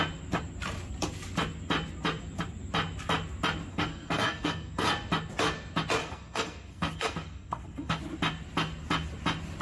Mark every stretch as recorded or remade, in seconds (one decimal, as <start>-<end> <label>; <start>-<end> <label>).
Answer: 0.0-3.7 recorded; 3.7-4.9 remade; 4.9-6.0 recorded; 6.0-8.0 remade; 8.0-9.6 recorded